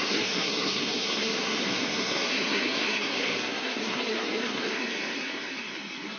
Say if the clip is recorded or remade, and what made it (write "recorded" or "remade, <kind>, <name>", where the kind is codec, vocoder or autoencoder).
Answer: remade, codec, SNAC